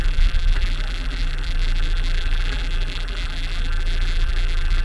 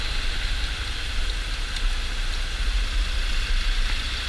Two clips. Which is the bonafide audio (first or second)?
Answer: second